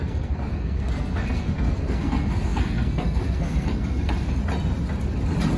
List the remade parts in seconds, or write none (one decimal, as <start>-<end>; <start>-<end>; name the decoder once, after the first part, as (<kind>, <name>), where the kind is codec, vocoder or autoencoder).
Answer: 0.0-4.4 (codec, SNAC)